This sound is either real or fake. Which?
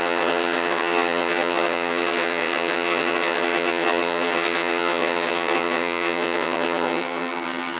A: fake